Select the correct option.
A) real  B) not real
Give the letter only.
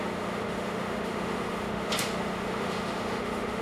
B